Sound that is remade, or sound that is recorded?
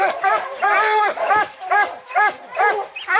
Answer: remade